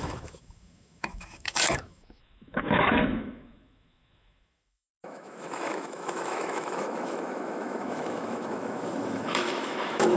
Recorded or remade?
remade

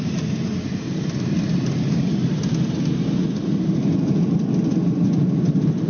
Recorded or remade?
recorded